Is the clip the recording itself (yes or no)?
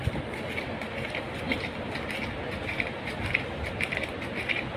yes